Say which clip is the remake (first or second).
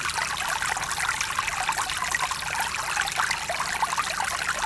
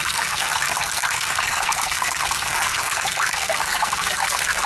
second